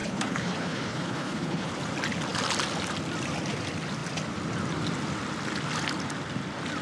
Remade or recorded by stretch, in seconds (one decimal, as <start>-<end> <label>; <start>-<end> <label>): 0.0-1.7 remade; 1.7-6.8 recorded